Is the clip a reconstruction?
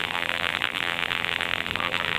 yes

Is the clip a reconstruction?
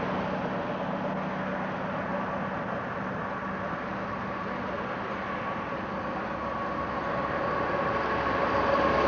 no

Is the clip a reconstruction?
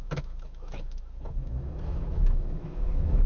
yes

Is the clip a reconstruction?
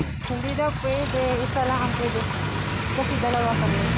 no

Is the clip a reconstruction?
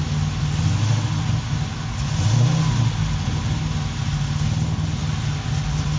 no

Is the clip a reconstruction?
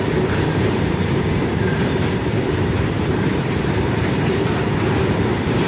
yes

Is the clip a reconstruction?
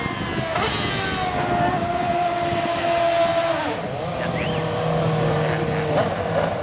no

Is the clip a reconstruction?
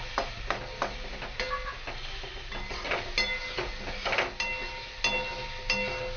no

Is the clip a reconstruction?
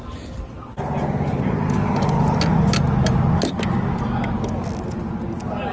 no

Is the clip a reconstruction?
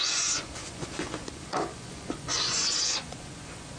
yes